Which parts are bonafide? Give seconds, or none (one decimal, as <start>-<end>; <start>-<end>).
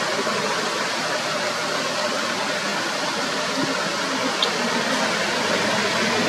0.0-6.3